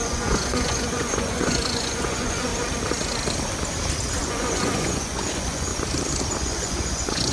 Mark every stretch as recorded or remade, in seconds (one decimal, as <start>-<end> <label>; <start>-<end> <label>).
0.0-2.5 remade; 2.5-4.2 recorded; 4.2-5.7 remade; 5.7-6.4 recorded; 6.4-7.3 remade